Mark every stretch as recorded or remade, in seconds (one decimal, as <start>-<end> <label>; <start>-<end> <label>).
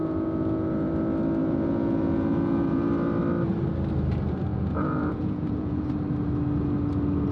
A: 0.0-0.9 remade; 0.9-1.4 recorded; 1.4-2.9 remade; 2.9-4.5 recorded; 4.5-5.9 remade; 5.9-7.3 recorded